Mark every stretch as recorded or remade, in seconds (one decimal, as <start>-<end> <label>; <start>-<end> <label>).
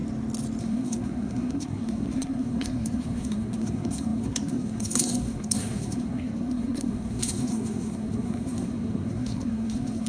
0.0-0.6 recorded; 0.6-10.1 remade